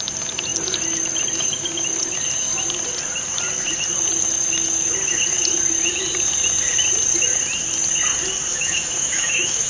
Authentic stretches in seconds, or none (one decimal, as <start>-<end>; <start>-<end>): 0.0-8.5